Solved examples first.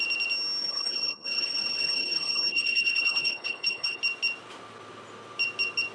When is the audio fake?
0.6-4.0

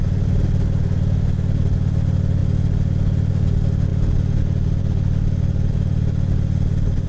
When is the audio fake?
none

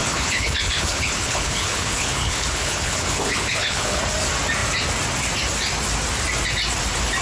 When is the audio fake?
0.0-4.0

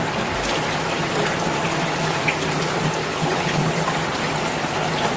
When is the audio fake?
3.0-3.7

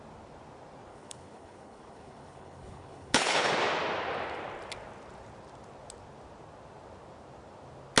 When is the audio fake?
0.9-3.5

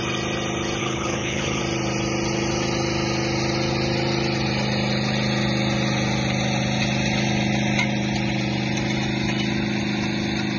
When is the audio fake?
0.8-1.6

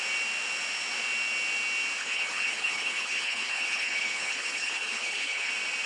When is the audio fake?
2.0-5.5